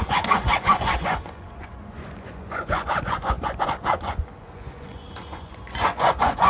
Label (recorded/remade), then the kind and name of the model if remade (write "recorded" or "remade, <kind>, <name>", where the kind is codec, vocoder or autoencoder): remade, vocoder, Vocos